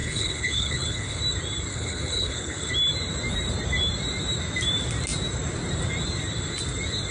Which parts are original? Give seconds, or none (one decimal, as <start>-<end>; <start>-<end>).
1.2-1.7; 2.7-7.1